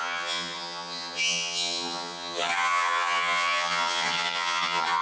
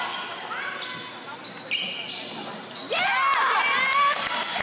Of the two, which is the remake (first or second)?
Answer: first